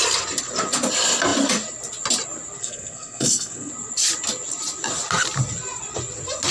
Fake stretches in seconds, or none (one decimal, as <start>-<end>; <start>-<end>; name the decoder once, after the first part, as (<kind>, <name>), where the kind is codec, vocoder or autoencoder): 2.6-3.7 (codec, SNAC)